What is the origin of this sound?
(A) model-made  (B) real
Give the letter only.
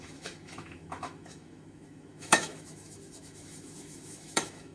A